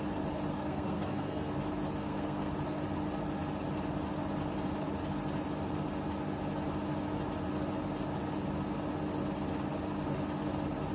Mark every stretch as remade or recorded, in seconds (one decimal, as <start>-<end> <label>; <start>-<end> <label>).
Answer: 0.0-0.5 recorded; 0.5-1.5 remade; 1.5-2.0 recorded; 2.0-2.5 remade; 2.5-10.9 recorded